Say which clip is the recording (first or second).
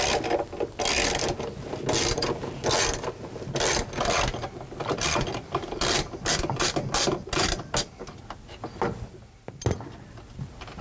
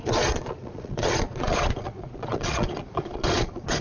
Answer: first